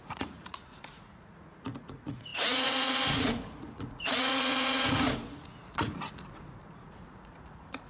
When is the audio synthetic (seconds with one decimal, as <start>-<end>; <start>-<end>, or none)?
0.0-7.9